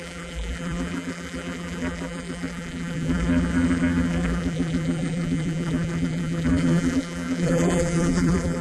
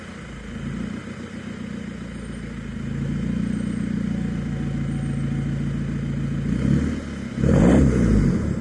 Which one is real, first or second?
second